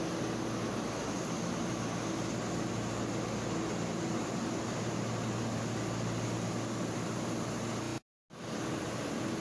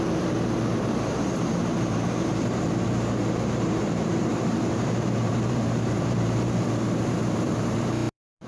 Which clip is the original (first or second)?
first